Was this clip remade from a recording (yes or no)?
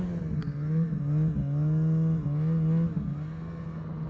no